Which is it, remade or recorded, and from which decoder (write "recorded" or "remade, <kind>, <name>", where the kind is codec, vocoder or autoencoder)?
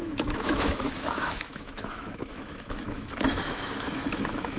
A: remade, autoencoder, DAC-VAE